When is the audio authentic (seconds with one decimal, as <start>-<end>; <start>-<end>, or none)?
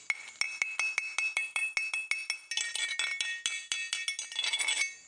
0.0-5.1